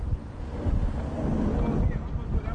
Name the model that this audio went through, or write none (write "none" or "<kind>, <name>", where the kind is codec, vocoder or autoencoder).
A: none